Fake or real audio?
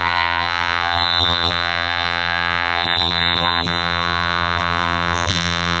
fake